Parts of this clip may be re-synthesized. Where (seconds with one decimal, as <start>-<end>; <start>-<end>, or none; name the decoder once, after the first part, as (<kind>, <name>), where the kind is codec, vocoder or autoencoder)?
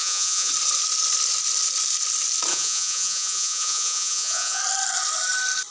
0.0-0.5 (vocoder, Vocos); 2.5-4.6